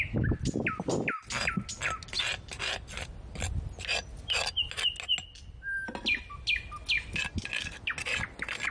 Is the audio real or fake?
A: real